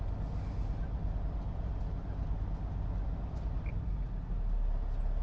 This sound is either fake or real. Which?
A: real